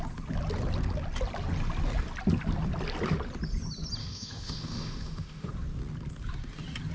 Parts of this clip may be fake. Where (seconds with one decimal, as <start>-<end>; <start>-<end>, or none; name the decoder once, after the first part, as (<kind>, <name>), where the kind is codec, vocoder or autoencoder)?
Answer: 4.0-5.5 (autoencoder, DAC-VAE)